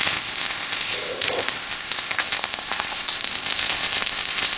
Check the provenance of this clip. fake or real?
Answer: fake